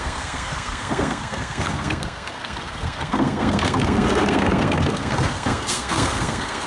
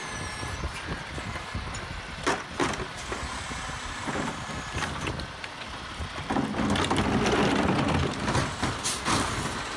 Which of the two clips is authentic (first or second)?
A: second